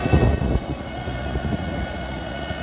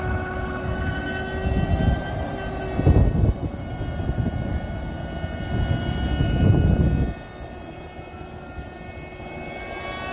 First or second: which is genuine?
second